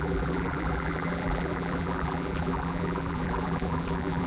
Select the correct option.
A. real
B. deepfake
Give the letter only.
B